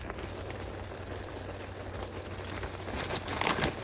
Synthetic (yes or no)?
no